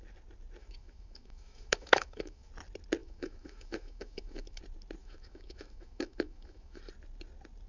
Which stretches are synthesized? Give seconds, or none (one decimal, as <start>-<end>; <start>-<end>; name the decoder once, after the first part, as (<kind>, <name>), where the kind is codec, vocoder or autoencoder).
0.6-2.5 (autoencoder, DAC-VAE); 3.0-4.6; 5.0-6.8